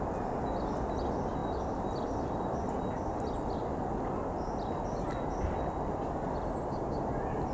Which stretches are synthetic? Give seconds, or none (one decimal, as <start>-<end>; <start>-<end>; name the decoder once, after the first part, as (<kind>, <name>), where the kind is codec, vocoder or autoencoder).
none